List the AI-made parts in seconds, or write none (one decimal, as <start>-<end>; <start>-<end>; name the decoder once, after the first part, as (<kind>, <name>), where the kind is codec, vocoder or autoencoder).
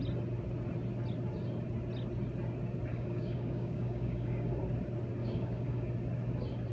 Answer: 2.9-4.6 (codec, DAC); 5.2-5.9